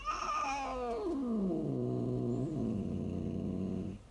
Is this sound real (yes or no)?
yes